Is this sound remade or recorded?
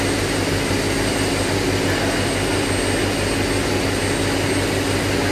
recorded